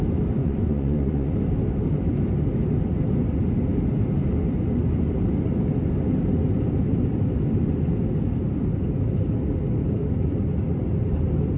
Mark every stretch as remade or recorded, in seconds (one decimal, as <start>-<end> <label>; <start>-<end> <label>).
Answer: 0.0-0.4 recorded; 0.4-1.3 remade; 1.3-11.6 recorded